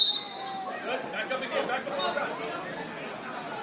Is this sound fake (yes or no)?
no